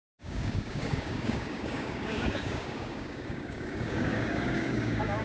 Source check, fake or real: fake